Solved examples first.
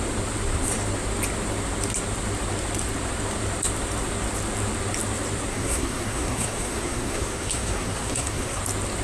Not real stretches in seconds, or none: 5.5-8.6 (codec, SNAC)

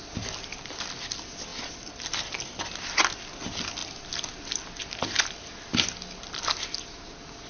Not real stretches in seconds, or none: none

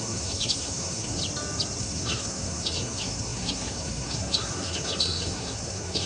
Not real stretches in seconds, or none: 0.0-1.2 (codec, SNAC); 1.8-6.1

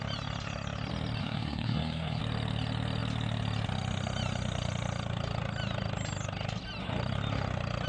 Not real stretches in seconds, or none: 1.2-2.2 (codec, SNAC)